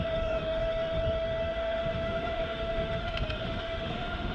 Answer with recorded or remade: remade